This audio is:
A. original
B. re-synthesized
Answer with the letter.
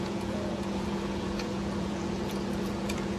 B